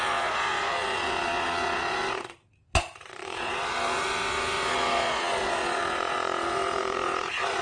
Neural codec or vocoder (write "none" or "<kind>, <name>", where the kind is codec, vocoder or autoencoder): vocoder, Vocos